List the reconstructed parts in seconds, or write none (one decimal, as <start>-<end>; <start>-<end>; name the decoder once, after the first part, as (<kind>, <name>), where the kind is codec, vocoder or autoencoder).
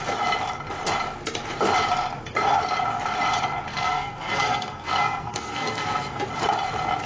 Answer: 3.7-6.2 (codec, SNAC)